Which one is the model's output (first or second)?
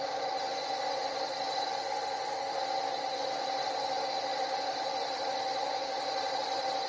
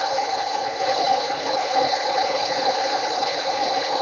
second